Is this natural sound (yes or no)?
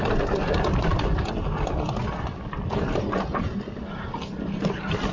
yes